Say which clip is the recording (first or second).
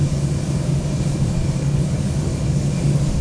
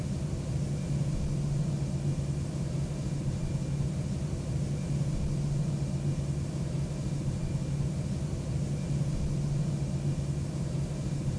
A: second